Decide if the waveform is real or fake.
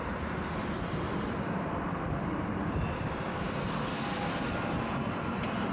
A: real